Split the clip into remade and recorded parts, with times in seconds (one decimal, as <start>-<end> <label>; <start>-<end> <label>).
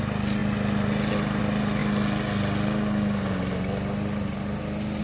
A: 0.0-5.0 recorded